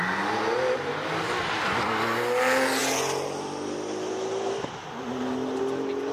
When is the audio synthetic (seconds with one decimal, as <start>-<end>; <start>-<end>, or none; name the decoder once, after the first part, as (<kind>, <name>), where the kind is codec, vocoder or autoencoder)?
none